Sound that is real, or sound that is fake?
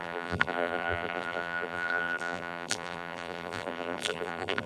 fake